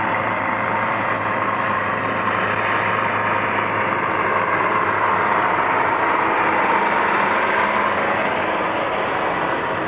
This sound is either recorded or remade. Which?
recorded